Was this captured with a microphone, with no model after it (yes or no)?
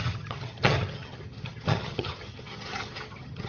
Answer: no